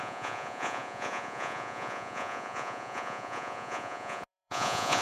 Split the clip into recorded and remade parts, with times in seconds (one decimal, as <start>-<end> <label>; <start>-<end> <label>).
0.0-5.0 remade